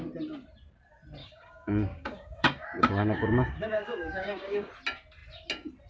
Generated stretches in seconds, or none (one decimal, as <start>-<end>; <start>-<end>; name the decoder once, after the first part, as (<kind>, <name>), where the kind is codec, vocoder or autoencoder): 1.2-4.7 (codec, DAC)